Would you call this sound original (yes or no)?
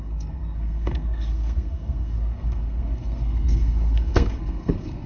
no